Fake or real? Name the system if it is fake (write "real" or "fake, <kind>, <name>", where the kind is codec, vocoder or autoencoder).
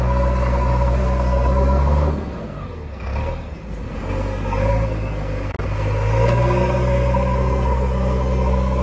fake, codec, SNAC